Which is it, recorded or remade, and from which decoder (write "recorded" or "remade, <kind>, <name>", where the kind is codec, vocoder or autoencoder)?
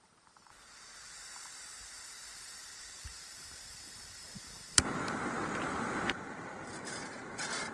remade, vocoder, BigVGAN v2